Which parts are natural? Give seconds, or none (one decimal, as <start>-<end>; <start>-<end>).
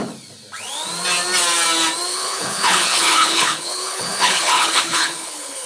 0.0-2.1